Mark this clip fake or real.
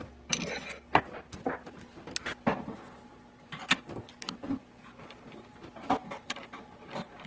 real